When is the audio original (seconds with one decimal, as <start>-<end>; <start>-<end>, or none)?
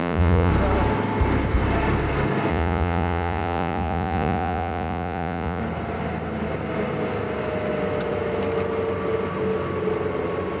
0.5-2.5; 5.6-10.6